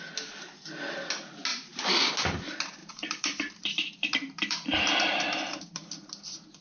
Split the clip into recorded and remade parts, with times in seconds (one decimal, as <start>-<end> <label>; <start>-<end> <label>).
0.0-1.5 recorded; 1.5-2.1 remade; 2.1-2.8 recorded; 2.8-6.6 remade